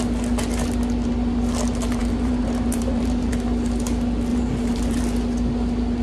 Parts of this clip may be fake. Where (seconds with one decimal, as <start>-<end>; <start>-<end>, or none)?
2.0-3.3; 4.3-5.0